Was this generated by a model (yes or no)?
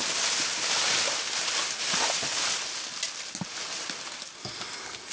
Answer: no